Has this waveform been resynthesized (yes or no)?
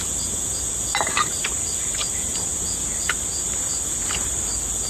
no